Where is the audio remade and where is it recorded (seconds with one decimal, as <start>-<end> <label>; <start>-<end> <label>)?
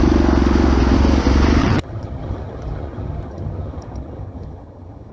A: 0.0-1.6 recorded; 1.6-5.1 remade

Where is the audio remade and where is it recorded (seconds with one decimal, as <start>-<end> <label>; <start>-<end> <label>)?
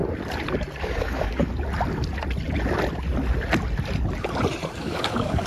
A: 0.0-0.8 recorded; 0.8-1.5 remade; 1.5-4.8 recorded; 4.8-5.5 remade